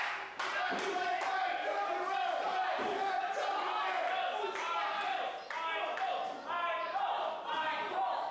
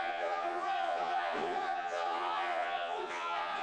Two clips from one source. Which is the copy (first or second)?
second